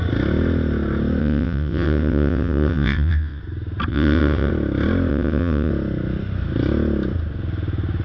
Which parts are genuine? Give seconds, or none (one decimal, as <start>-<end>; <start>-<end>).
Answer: 0.0-1.2; 3.4-3.9; 4.5-5.1; 5.7-8.0

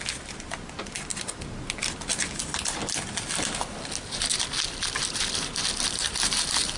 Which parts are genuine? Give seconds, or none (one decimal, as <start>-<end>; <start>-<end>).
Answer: 0.0-6.8

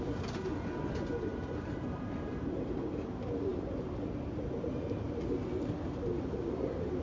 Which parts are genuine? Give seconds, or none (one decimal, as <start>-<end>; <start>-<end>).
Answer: 0.0-1.3; 2.8-7.0

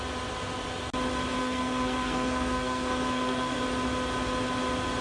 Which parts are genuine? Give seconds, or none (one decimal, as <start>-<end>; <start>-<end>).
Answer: 0.0-1.4; 3.6-5.0